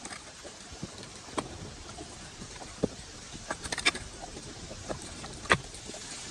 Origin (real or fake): fake